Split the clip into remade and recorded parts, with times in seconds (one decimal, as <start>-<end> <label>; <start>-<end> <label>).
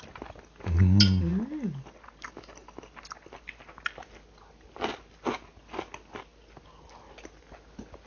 0.0-8.1 recorded